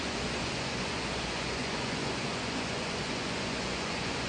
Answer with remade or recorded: remade